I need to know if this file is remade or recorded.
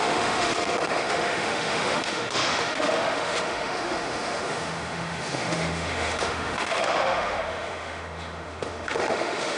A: remade